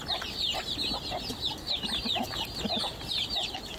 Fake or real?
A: real